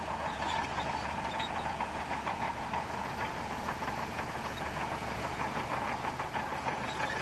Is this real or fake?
fake